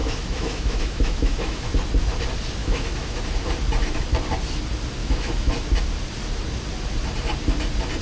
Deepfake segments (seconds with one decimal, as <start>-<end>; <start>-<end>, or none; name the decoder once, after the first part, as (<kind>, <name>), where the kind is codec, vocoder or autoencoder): 0.0-1.7 (autoencoder, DAC-VAE); 2.6-3.2; 5.0-5.5